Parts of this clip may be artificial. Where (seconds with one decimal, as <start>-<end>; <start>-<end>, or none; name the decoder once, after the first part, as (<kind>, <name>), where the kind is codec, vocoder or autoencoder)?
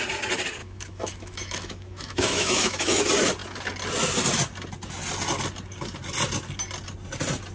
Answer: 0.6-3.0 (autoencoder, DAC-VAE)